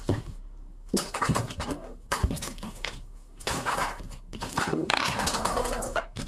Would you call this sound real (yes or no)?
no